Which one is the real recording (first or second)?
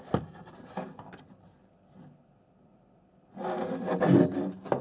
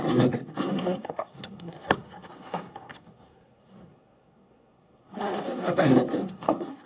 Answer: first